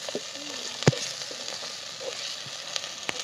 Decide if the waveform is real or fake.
real